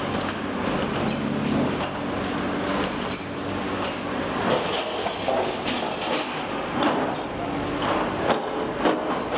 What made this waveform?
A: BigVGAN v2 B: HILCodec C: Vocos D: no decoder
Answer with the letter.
D